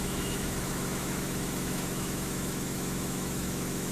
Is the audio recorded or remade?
remade